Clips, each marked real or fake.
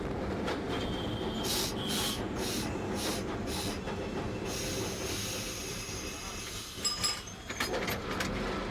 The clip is real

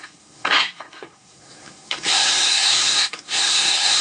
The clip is fake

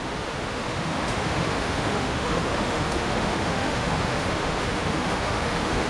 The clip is fake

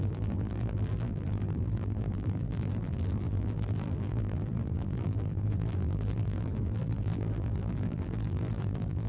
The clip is fake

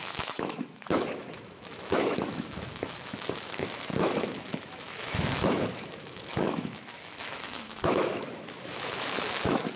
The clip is fake